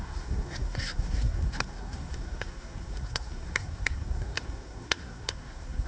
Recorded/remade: remade